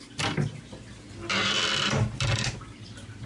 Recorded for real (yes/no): yes